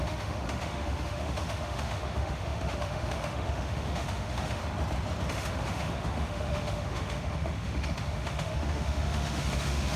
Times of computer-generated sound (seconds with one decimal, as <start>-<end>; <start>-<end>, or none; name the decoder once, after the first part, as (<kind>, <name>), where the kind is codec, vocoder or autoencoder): 0.0-4.6 (autoencoder, DAC-VAE); 5.3-10.0